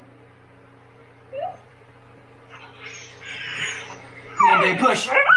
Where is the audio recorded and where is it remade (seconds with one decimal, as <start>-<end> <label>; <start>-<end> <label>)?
0.0-1.0 recorded; 1.0-1.9 remade; 1.9-4.5 recorded; 4.5-5.4 remade